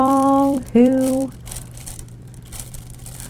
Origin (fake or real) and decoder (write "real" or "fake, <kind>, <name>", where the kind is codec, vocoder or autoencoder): fake, vocoder, BigVGAN v2